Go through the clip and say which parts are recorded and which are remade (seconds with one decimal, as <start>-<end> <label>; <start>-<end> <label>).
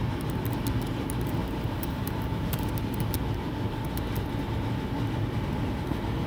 0.0-1.4 recorded; 1.4-2.7 remade; 2.7-6.3 recorded